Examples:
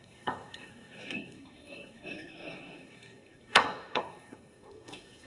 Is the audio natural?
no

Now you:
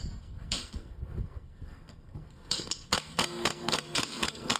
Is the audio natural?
no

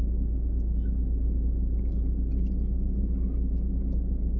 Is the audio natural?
yes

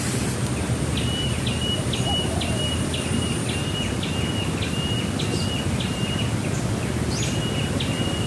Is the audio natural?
yes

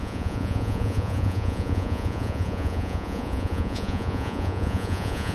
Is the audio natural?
no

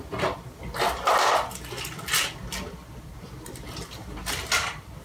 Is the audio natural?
yes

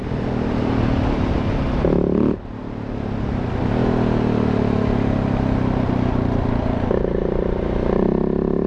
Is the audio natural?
yes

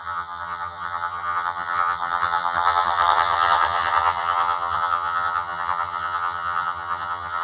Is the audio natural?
no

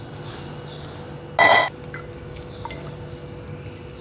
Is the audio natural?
yes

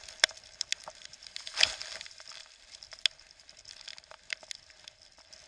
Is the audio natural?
yes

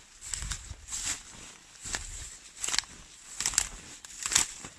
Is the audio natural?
yes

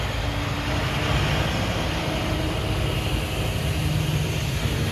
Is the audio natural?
yes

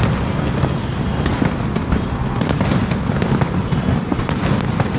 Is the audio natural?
yes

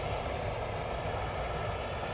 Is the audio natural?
yes